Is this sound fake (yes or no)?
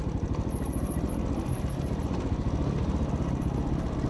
no